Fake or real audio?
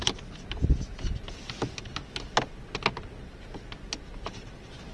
real